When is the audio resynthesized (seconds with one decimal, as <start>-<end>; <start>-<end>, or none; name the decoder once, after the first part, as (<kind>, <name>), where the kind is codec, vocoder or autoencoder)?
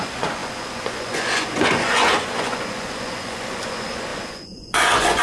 0.0-5.2 (vocoder, Vocos)